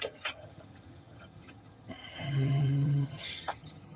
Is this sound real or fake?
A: fake